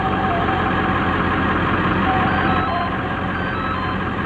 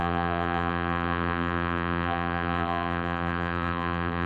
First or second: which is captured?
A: first